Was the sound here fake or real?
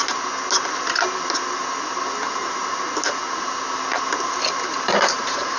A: real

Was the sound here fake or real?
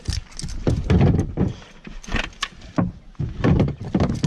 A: real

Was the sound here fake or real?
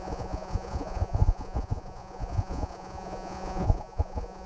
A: fake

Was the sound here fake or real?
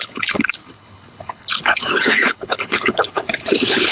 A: fake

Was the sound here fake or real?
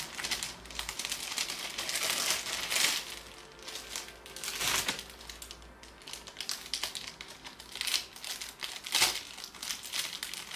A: real